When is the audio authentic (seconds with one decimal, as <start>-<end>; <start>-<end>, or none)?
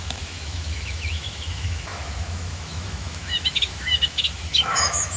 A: none